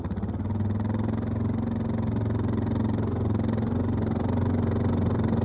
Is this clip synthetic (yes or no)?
no